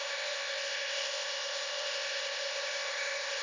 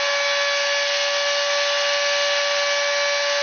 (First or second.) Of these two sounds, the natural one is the second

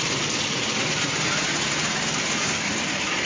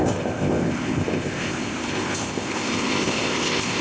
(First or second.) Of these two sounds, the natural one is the first